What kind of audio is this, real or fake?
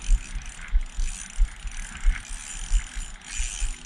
real